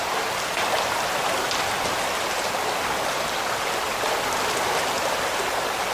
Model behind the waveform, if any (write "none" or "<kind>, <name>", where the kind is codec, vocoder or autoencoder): none